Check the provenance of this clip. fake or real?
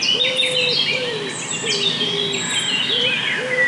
real